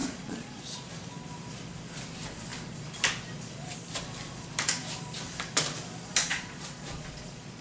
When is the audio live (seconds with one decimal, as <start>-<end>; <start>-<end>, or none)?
0.9-6.2